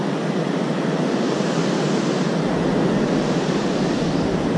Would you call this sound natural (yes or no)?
yes